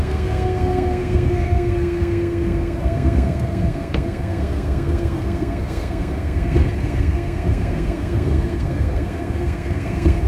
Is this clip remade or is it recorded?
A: remade